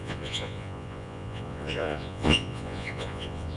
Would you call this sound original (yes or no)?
no